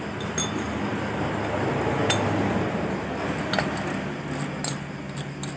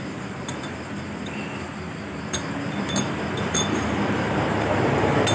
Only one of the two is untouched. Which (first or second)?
first